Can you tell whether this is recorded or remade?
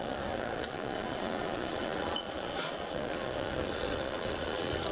remade